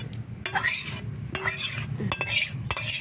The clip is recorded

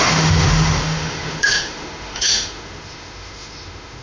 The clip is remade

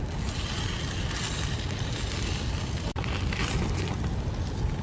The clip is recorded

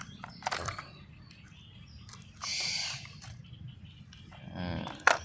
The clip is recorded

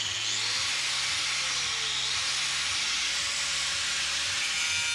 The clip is recorded